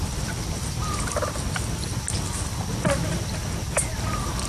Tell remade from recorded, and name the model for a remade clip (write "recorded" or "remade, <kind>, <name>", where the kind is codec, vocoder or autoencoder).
recorded